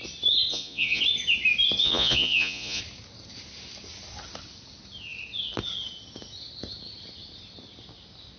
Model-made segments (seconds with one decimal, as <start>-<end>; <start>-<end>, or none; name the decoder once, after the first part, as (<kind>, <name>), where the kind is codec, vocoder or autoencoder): 0.5-1.0 (vocoder, Vocos); 1.8-2.8